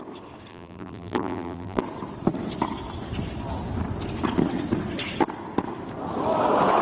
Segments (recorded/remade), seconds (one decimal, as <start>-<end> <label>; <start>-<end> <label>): 0.0-0.5 recorded; 0.5-1.8 remade; 1.8-6.8 recorded